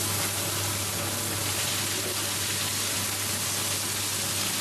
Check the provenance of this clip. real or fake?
real